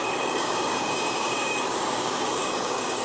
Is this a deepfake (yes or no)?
yes